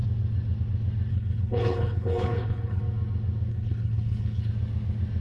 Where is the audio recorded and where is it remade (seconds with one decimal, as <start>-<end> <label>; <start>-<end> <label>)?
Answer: 0.0-1.1 recorded; 1.1-2.8 remade; 2.8-3.5 recorded; 3.5-4.5 remade; 4.5-5.2 recorded